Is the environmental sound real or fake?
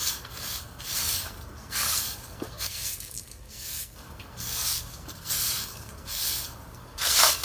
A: fake